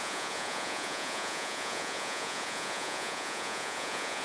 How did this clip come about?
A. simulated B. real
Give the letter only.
A